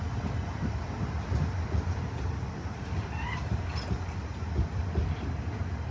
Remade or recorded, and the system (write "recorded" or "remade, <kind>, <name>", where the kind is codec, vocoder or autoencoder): recorded